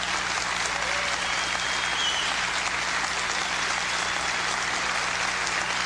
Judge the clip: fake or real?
real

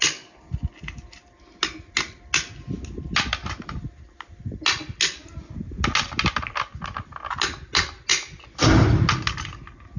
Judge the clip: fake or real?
real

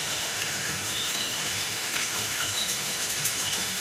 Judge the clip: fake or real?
fake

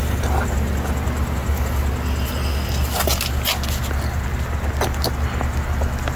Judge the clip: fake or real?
real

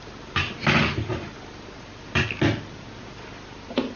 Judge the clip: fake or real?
real